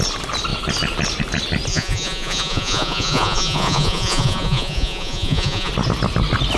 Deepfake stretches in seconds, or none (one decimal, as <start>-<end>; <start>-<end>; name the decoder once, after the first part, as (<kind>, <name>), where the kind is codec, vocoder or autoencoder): 1.7-5.7 (vocoder, Vocos)